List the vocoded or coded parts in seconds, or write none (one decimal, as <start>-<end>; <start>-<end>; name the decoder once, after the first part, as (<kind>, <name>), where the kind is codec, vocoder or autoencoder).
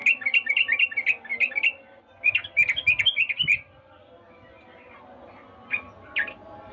0.0-0.5 (vocoder, BigVGAN v2); 1.3-4.1